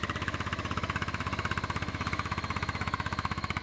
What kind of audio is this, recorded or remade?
remade